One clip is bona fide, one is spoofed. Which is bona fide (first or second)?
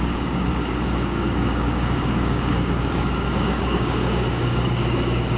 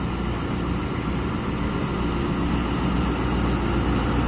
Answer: second